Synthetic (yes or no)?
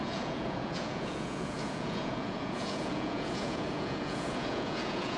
yes